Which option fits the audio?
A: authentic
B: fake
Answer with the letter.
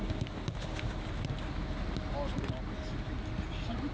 A